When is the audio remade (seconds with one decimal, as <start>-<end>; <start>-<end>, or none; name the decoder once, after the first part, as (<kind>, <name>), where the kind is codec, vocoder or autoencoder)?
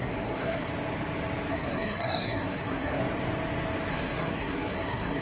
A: 0.0-0.7 (codec, SNAC); 1.5-3.0; 3.9-5.2